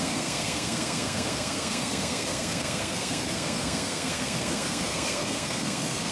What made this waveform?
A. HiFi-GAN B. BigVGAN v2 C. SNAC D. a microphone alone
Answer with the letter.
C